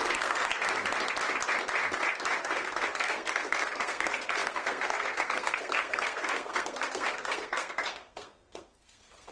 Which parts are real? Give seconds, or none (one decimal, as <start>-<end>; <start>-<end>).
0.5-2.4